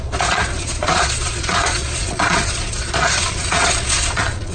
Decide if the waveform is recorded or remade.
remade